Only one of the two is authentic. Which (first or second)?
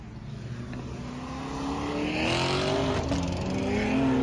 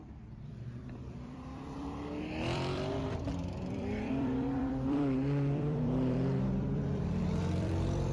first